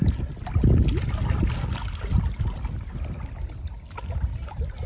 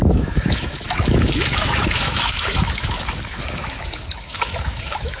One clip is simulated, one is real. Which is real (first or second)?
first